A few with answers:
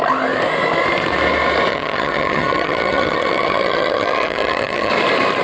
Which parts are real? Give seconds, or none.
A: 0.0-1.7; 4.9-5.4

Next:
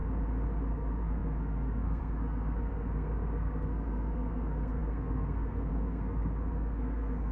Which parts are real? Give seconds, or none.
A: 0.0-0.7

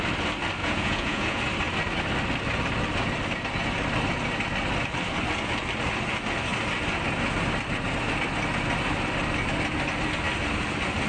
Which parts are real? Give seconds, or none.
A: 0.0-0.6; 1.4-11.1

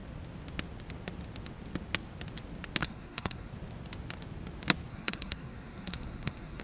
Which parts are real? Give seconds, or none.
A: 0.0-2.8; 3.5-4.9

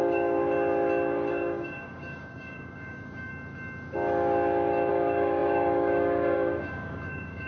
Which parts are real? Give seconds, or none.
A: 0.4-1.3; 3.3-4.9

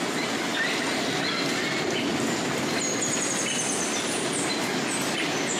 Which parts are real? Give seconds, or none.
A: 0.0-5.6

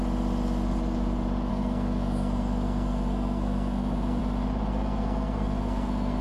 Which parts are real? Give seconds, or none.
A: 0.0-1.5; 4.2-4.7